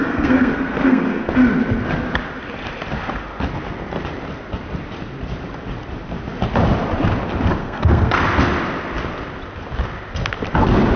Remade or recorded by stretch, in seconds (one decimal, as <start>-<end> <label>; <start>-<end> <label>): 0.0-1.3 remade; 1.3-7.6 recorded; 7.6-8.2 remade; 8.2-11.0 recorded